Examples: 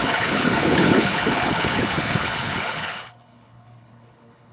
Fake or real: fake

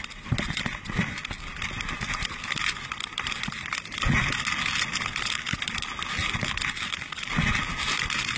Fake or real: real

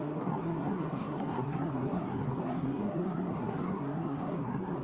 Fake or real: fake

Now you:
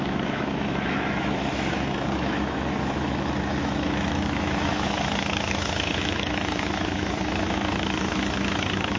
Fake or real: fake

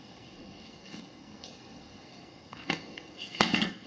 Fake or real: fake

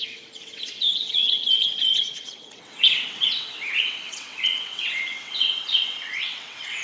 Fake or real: fake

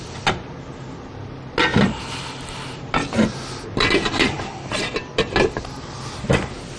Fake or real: real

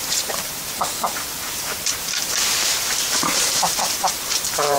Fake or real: fake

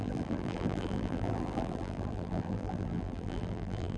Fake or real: fake